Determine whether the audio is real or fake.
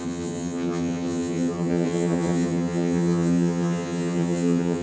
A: fake